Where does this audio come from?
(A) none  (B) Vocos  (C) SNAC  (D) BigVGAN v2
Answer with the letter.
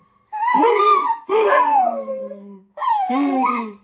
C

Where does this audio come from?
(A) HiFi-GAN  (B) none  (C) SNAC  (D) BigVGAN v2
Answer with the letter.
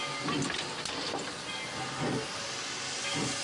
B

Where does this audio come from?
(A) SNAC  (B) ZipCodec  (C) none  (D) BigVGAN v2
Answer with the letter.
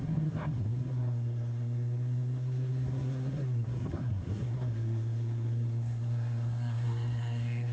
A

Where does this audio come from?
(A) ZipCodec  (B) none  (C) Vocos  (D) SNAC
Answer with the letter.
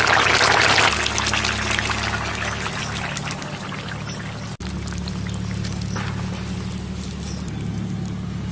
B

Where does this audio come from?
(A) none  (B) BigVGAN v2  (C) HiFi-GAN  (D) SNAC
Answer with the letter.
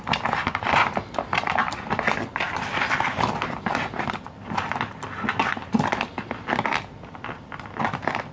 A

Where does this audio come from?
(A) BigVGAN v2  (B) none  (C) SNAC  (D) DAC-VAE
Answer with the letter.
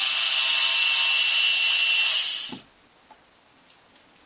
B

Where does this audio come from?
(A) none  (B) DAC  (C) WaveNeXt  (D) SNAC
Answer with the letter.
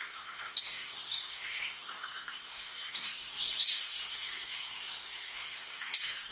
D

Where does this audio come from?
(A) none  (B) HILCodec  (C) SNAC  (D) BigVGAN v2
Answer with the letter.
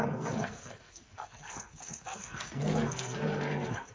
C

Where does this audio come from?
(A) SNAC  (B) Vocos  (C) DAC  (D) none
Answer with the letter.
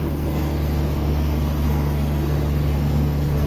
A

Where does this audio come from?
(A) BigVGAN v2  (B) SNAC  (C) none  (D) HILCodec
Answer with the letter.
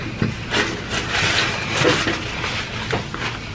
C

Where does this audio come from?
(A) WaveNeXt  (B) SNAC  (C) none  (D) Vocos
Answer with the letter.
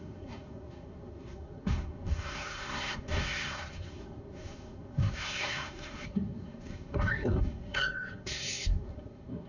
B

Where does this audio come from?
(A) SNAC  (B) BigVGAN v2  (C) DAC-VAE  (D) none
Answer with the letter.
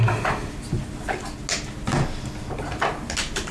D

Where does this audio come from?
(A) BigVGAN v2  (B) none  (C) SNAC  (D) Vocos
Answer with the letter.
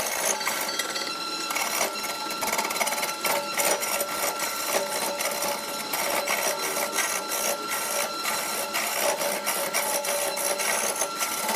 B